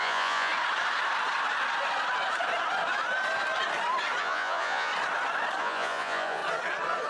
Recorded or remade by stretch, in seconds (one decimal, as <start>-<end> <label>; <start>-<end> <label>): 0.0-0.5 remade; 0.5-4.2 recorded; 4.2-4.9 remade; 4.9-5.6 recorded; 5.6-6.4 remade; 6.4-7.1 recorded